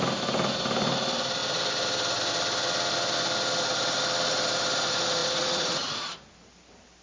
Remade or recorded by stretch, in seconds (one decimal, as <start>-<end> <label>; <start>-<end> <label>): 0.0-5.2 recorded; 5.2-6.2 remade; 6.2-7.0 recorded